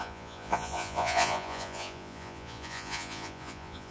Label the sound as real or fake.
fake